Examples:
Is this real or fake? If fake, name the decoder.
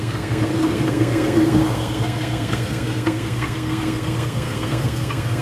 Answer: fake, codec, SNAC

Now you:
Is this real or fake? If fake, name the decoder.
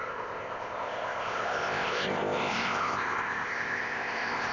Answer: fake, codec, ZipCodec